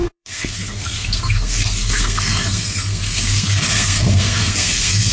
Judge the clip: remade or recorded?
remade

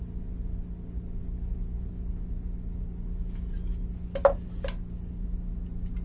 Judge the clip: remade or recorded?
recorded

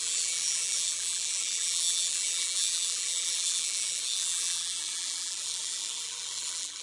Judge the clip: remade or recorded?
remade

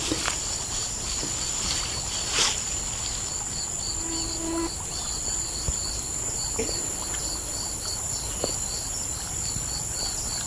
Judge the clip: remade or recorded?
recorded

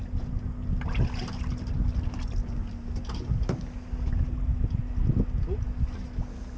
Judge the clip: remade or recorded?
recorded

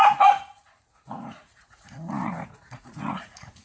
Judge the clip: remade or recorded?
remade